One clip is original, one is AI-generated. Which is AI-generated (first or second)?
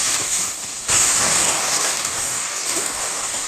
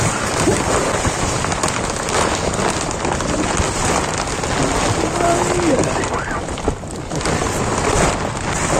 first